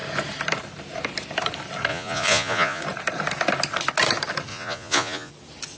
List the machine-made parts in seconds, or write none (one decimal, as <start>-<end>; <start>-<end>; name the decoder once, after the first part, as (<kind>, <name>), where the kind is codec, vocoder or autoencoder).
1.9-2.8 (vocoder, Vocos); 4.5-5.3